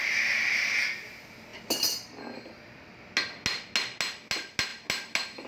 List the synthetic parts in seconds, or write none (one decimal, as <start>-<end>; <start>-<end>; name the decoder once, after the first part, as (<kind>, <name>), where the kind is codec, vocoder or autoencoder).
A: none